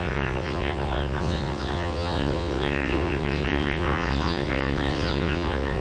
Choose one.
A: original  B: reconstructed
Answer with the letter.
B